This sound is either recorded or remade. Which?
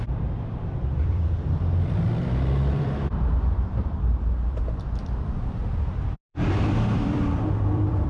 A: remade